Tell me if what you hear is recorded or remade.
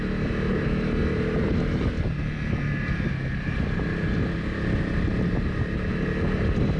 recorded